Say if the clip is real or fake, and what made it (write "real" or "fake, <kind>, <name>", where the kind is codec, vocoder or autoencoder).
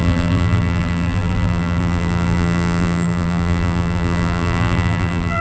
fake, vocoder, BigVGAN v2